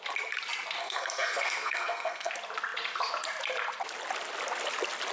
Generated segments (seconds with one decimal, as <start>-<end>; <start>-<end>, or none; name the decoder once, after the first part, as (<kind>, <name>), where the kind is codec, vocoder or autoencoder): 0.8-2.3 (codec, SNAC)